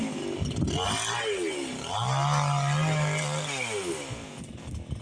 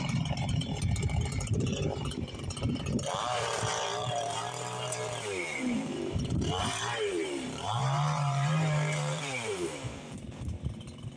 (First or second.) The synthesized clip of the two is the second